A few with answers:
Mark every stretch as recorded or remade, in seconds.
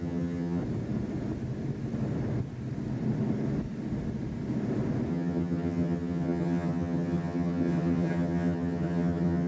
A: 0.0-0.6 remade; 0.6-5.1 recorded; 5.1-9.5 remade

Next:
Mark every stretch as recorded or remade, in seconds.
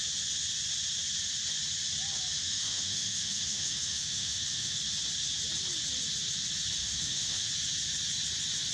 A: 0.0-2.4 recorded; 2.4-4.8 remade; 4.8-6.8 recorded; 6.8-7.5 remade; 7.5-8.7 recorded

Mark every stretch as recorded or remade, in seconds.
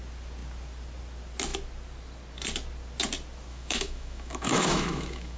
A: 0.0-3.5 recorded; 3.5-5.4 remade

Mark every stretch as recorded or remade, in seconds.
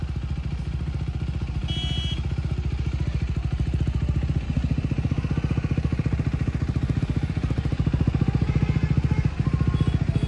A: 0.0-10.3 recorded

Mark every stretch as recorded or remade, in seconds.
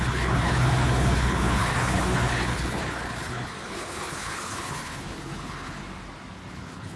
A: 0.0-5.8 remade; 5.8-6.5 recorded; 6.5-7.0 remade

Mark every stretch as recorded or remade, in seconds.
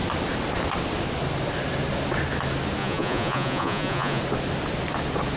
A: 0.0-2.8 recorded; 2.8-4.2 remade; 4.2-5.4 recorded